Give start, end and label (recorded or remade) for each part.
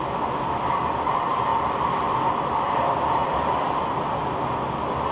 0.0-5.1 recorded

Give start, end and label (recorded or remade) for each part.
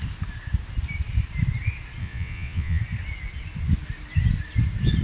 0.0-2.0 recorded; 2.0-2.8 remade; 2.8-5.0 recorded